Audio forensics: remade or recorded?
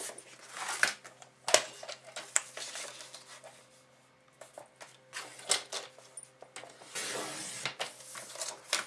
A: recorded